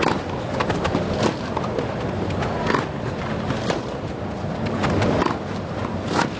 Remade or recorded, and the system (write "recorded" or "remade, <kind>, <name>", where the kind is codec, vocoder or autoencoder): recorded